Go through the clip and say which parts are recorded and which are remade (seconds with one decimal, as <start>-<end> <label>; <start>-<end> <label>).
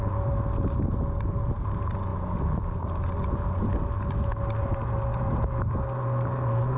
0.0-6.8 recorded